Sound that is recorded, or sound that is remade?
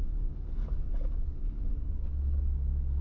recorded